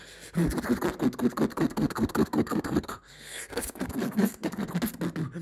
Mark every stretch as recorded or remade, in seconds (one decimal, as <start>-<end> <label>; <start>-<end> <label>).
0.0-1.5 recorded; 1.5-4.7 remade; 4.7-5.4 recorded